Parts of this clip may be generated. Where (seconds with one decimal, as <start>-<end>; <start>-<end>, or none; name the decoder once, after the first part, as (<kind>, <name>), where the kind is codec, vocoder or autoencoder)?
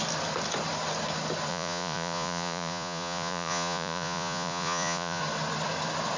1.5-5.2 (vocoder, Vocos)